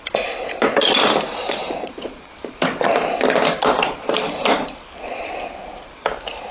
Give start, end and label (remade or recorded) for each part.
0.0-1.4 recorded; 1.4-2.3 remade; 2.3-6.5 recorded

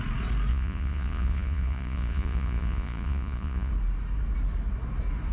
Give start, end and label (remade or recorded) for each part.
0.0-0.5 recorded; 0.5-3.7 remade; 3.7-5.3 recorded

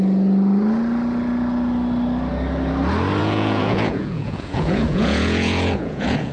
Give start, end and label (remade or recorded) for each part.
0.0-3.2 recorded; 3.2-6.3 remade